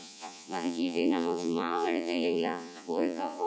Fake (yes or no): yes